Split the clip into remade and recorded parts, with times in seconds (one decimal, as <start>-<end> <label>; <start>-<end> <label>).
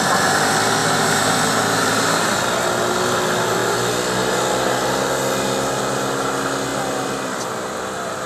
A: 0.0-0.8 recorded; 0.8-2.4 remade; 2.4-8.3 recorded